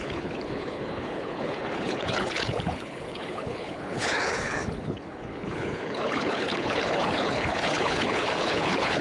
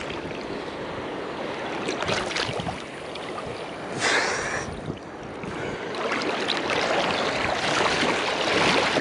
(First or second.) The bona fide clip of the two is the second